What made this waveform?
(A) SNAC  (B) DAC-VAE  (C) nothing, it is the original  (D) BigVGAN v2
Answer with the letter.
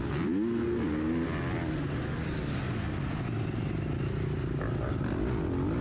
C